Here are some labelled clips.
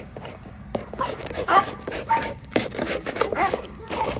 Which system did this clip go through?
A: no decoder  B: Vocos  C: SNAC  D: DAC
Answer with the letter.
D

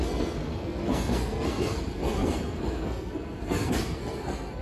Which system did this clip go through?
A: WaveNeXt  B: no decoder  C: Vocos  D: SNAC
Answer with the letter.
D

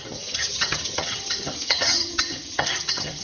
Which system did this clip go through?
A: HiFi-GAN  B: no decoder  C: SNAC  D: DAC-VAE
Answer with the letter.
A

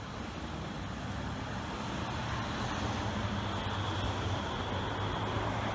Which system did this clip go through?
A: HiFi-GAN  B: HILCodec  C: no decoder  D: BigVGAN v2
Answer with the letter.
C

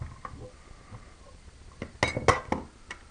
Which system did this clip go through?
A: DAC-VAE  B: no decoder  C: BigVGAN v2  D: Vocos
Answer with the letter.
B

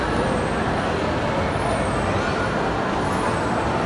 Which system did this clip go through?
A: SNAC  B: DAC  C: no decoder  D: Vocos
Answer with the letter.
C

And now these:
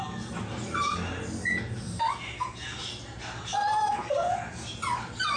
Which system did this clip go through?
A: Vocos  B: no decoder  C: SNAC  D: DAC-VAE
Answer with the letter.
B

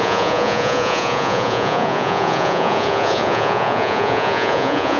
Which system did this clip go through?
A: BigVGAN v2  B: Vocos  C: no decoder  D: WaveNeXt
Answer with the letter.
B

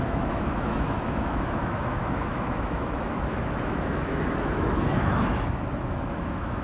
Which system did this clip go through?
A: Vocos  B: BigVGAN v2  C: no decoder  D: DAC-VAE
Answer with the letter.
D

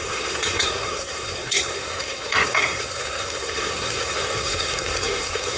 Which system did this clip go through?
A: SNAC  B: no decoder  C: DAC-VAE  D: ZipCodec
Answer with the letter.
A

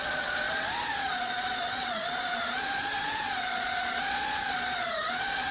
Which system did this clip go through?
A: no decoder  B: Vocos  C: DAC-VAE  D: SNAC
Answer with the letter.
B